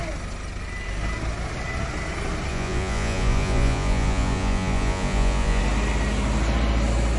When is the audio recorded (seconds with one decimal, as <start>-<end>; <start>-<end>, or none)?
0.0-2.5; 5.6-7.2

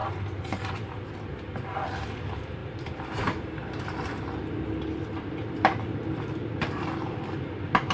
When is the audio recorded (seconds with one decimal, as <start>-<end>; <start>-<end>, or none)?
0.7-2.6; 3.4-7.9

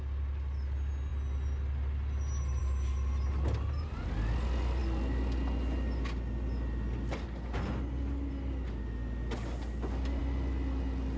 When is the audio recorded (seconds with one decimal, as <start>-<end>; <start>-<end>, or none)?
0.0-11.2

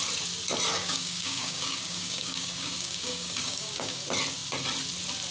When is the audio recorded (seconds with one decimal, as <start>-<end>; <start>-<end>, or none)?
0.0-0.8; 4.0-5.3

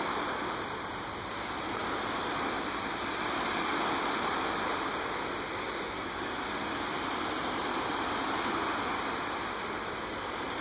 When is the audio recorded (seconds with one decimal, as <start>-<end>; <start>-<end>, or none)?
6.6-9.1

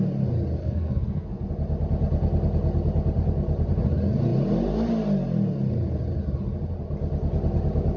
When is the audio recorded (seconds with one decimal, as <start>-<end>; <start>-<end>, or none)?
0.0-0.6; 1.5-8.0

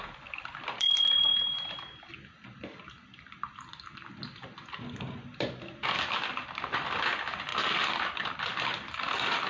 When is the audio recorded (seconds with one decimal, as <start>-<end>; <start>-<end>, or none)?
0.0-9.5

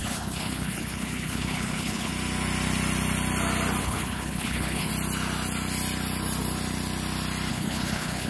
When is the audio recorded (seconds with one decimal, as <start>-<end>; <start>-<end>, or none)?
2.1-3.8; 4.9-7.5